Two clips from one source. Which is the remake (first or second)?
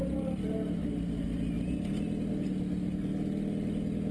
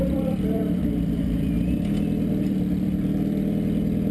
second